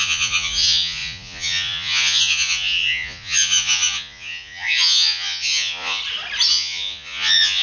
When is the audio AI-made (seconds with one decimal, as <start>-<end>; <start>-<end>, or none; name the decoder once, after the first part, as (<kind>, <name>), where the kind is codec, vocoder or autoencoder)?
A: 0.0-6.0 (vocoder, Vocos); 6.5-7.6